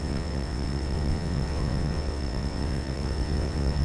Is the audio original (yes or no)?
no